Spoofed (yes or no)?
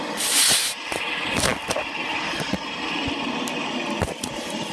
no